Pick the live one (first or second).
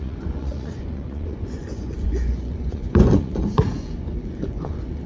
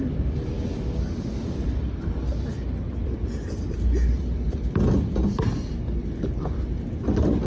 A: second